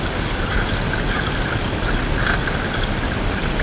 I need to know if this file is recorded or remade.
recorded